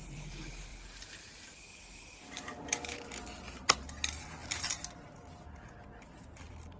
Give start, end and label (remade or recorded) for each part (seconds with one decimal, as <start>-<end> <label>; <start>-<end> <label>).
0.0-6.8 recorded